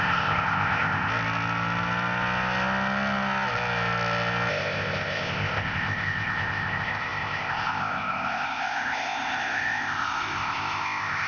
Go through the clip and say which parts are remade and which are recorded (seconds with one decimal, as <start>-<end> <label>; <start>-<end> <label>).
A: 0.0-1.1 remade; 1.1-4.5 recorded; 4.5-11.3 remade